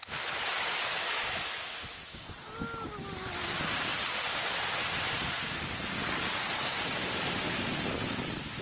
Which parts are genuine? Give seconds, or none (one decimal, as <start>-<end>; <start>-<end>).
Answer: 2.3-8.6